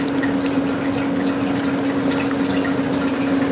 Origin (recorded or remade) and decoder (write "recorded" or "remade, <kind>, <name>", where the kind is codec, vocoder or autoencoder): recorded